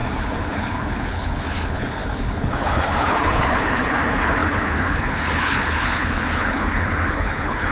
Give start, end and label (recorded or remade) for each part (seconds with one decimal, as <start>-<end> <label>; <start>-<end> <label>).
0.0-7.7 remade